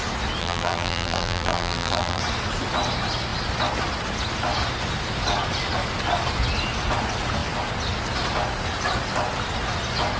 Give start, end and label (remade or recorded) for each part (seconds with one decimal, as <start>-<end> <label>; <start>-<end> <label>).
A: 0.0-0.4 recorded; 0.4-2.2 remade; 2.2-10.2 recorded